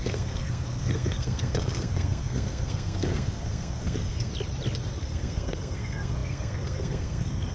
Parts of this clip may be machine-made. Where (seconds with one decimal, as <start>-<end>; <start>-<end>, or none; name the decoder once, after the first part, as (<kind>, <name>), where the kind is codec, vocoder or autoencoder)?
0.0-4.3 (codec, SNAC); 5.0-7.5